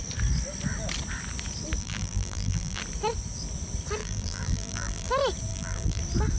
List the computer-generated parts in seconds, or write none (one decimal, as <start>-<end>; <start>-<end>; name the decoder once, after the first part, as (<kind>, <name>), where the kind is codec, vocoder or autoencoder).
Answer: 1.8-2.8 (vocoder, BigVGAN v2); 4.0-5.1; 5.5-6.0